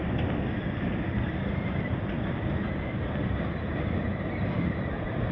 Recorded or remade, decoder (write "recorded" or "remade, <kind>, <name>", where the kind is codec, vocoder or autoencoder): recorded